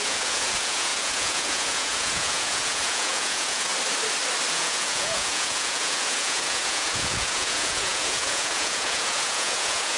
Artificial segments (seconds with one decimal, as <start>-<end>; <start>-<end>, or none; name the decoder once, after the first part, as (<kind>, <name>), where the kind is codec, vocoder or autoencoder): 0.0-3.7 (vocoder, Vocos); 4.5-10.0